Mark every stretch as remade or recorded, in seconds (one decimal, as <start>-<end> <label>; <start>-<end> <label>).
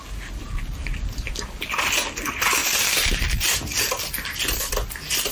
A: 0.0-0.8 recorded; 0.8-1.3 remade; 1.3-2.6 recorded; 2.6-3.9 remade; 3.9-5.3 recorded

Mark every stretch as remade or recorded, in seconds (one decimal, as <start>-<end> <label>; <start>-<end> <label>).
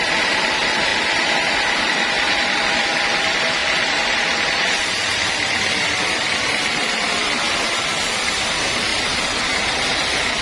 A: 0.0-10.4 remade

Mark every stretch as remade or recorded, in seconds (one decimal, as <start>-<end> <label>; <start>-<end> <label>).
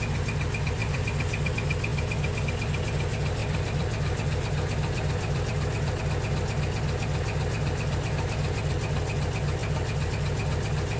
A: 0.0-0.8 recorded; 0.8-1.5 remade; 1.5-3.4 recorded; 3.4-6.0 remade; 6.0-9.6 recorded; 9.6-10.1 remade; 10.1-11.0 recorded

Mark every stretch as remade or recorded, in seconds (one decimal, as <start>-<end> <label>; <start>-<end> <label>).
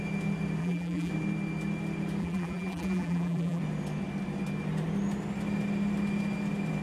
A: 0.0-0.6 recorded; 0.6-1.1 remade; 1.1-2.2 recorded; 2.2-3.6 remade; 3.6-6.8 recorded